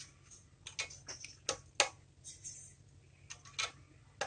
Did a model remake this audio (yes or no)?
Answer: no